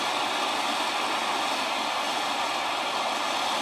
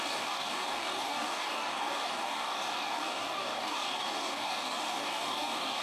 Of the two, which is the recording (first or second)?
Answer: first